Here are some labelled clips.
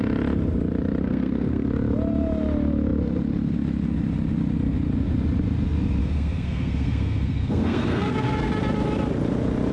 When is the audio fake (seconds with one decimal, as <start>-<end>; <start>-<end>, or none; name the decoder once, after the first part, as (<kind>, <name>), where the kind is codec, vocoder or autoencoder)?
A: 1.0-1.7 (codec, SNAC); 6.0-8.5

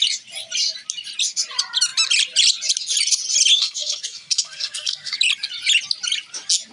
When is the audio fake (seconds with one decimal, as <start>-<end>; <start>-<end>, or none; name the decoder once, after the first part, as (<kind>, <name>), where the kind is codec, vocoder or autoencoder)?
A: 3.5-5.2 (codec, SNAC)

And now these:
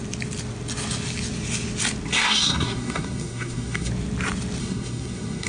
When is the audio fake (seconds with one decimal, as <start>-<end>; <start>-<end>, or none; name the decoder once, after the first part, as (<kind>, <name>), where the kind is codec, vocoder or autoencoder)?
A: 2.1-3.9 (codec, SNAC); 4.6-5.5

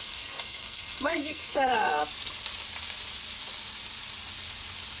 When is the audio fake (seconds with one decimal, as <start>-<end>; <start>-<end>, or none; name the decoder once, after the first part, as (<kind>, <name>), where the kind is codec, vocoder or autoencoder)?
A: 0.0-2.0 (codec, SNAC)